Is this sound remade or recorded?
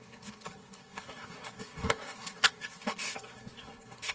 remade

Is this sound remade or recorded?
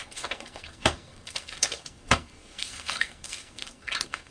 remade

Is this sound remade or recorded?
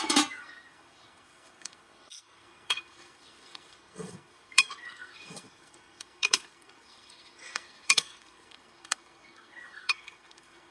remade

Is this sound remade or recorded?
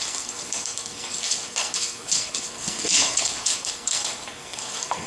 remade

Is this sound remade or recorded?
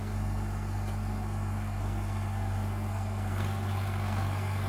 remade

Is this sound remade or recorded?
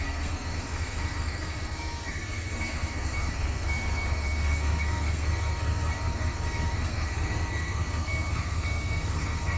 remade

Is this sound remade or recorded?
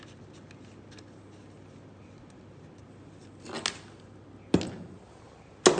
recorded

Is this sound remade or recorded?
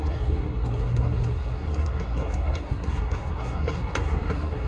remade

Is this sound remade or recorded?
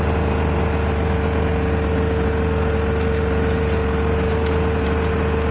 recorded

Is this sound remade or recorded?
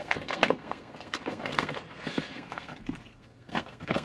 remade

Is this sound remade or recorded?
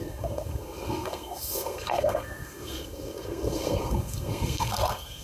remade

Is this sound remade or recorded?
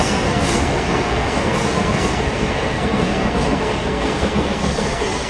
remade